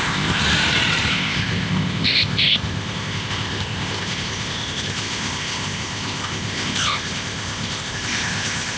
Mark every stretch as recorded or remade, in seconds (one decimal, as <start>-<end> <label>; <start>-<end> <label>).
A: 0.0-0.4 remade; 0.4-1.1 recorded; 1.1-8.8 remade